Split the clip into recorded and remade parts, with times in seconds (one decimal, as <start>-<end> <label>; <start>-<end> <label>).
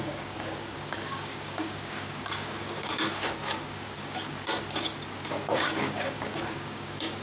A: 0.0-4.5 remade; 4.5-5.1 recorded; 5.1-7.2 remade